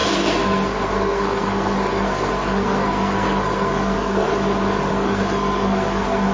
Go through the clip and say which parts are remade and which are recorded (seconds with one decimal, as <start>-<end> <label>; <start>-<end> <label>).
0.0-4.3 remade; 4.3-4.9 recorded; 4.9-6.3 remade